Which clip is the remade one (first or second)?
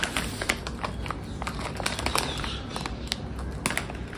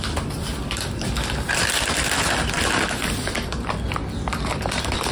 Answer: second